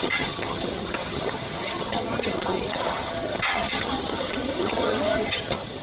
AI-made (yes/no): yes